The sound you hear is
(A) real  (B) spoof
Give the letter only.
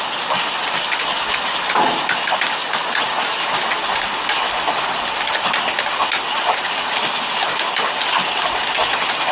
A